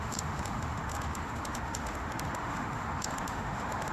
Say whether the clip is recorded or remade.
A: remade